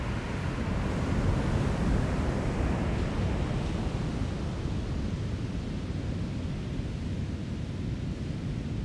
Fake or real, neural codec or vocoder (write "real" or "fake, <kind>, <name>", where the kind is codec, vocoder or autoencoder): real